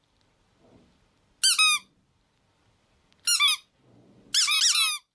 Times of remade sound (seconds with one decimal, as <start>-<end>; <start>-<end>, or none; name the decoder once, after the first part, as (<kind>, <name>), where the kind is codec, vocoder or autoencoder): none